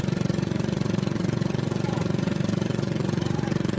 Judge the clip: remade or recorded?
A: remade